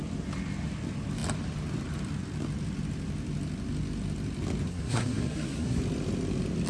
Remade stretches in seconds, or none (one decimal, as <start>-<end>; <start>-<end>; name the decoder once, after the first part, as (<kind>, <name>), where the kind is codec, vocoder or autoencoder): 4.7-5.8 (codec, SNAC)